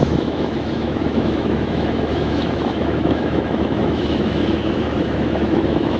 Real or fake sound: fake